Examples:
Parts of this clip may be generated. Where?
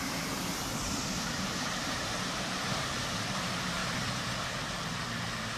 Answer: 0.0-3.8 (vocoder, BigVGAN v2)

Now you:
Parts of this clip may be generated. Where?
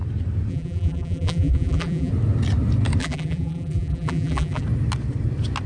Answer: 0.5-2.1 (vocoder, BigVGAN v2); 3.0-4.6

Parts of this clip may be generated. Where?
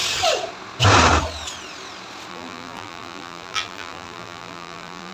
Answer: 2.3-5.1 (vocoder, BigVGAN v2)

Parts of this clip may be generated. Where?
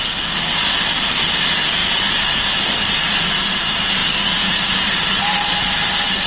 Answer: none